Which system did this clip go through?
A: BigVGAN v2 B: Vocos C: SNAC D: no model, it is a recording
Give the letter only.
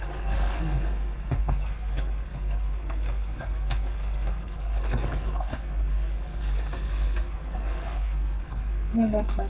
C